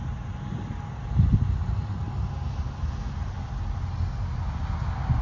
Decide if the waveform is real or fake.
real